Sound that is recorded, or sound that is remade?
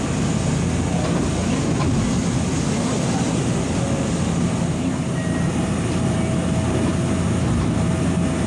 recorded